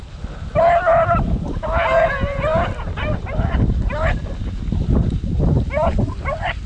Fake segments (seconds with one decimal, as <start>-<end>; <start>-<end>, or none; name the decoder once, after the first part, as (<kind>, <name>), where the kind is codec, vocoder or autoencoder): none